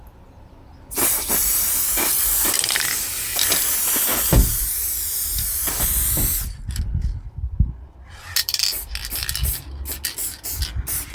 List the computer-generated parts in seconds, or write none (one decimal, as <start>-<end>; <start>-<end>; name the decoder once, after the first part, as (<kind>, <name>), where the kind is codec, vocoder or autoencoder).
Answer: 1.4-2.1 (vocoder, BigVGAN v2); 3.3-4.7; 8.4-8.9